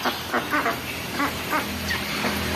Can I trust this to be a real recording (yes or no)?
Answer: yes